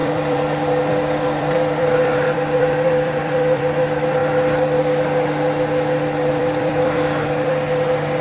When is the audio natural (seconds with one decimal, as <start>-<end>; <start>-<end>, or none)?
4.2-6.3